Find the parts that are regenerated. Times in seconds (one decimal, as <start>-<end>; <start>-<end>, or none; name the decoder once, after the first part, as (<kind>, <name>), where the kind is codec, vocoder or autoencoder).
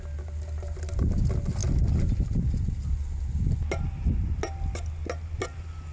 none